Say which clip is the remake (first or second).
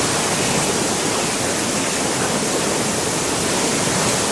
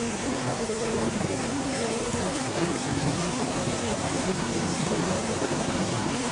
second